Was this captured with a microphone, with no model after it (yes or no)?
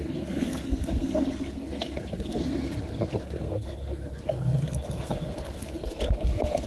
no